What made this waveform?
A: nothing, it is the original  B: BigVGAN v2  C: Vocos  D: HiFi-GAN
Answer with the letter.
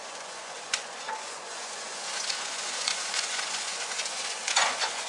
C